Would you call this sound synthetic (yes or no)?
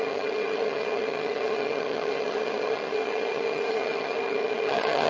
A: yes